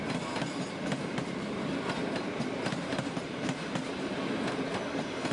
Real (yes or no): yes